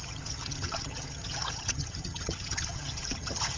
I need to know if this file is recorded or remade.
remade